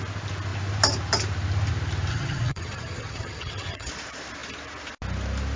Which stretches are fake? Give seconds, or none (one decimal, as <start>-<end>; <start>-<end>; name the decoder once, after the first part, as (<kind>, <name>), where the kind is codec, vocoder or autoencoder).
2.1-3.9 (vocoder, HiFi-GAN)